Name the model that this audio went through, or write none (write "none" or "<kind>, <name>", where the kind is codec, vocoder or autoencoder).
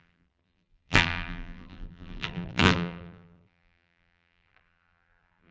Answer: vocoder, BigVGAN v2